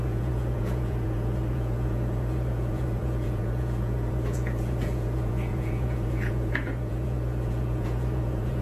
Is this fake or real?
fake